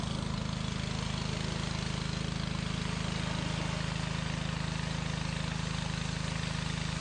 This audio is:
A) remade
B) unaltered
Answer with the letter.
B